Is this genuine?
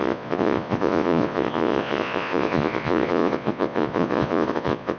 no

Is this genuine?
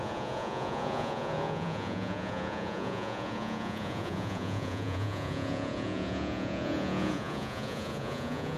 no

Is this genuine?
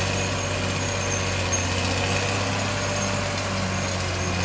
yes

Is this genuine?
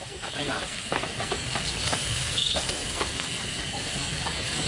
no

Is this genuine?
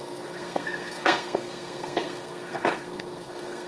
no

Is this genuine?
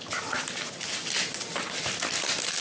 yes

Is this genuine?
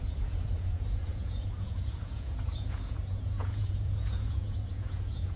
no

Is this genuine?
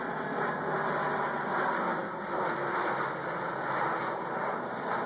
yes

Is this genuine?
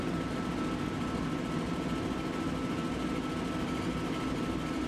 yes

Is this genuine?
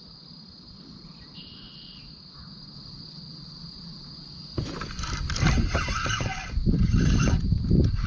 yes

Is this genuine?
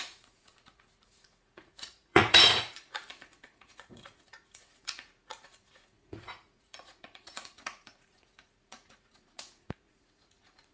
no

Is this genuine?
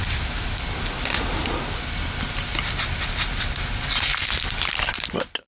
yes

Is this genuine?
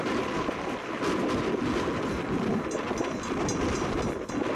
yes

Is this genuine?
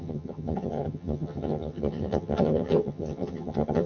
no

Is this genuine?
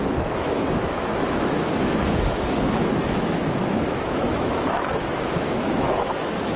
no